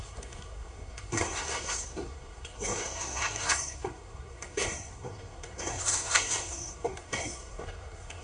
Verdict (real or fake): fake